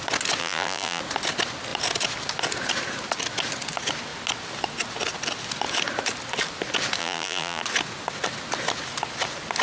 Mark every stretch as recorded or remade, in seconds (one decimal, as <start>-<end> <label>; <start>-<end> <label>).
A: 0.0-0.4 recorded; 0.4-1.0 remade; 1.0-7.0 recorded; 7.0-7.6 remade; 7.6-9.6 recorded